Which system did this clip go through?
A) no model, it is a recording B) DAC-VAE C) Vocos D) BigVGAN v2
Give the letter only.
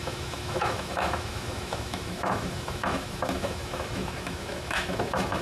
B